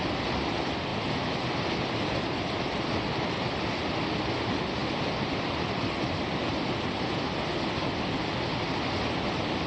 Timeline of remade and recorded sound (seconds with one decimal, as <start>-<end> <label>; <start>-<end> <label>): 0.0-9.7 recorded